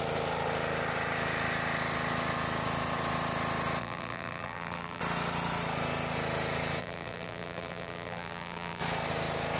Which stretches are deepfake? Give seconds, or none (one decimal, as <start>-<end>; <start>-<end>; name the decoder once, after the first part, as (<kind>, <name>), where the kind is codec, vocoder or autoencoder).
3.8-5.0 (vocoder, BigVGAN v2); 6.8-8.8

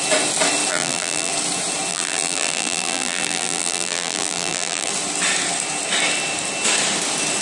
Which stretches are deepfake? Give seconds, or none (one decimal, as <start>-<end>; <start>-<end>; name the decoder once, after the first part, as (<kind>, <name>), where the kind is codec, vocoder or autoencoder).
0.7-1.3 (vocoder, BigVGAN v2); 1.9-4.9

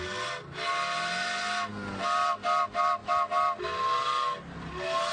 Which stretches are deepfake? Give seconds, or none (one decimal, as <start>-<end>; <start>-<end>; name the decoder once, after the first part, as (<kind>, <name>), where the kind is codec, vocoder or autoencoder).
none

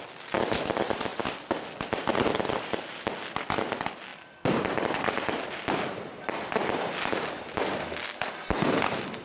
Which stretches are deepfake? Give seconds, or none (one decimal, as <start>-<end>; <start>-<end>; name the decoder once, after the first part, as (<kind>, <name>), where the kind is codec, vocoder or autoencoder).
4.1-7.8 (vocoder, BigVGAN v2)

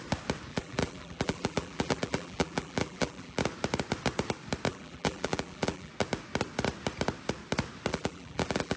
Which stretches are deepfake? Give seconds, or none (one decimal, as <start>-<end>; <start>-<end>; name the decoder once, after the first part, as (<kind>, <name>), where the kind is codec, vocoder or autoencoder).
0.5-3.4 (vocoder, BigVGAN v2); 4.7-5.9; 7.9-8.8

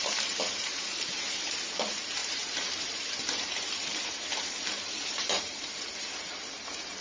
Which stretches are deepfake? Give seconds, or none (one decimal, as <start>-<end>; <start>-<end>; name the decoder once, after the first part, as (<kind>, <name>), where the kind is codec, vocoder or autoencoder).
0.0-7.0 (vocoder, BigVGAN v2)

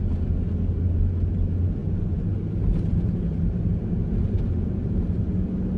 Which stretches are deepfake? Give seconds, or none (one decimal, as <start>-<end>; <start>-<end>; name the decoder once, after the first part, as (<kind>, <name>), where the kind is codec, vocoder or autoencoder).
1.8-5.3 (vocoder, BigVGAN v2)

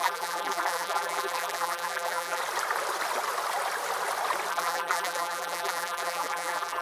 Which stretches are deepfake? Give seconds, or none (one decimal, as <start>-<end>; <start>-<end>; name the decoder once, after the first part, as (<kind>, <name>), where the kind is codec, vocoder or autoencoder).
0.0-2.4 (vocoder, BigVGAN v2); 4.5-6.8